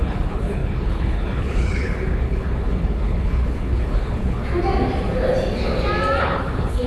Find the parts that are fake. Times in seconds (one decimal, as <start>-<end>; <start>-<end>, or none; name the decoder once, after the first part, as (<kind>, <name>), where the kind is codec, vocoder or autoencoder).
0.0-4.4 (codec, HILCodec); 6.2-6.9